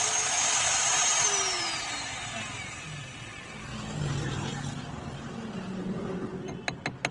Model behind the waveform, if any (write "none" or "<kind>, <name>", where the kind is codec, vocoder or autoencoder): none